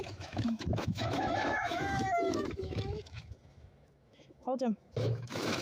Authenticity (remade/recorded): remade